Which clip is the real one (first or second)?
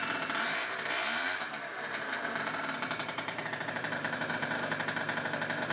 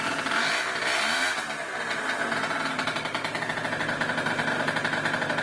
second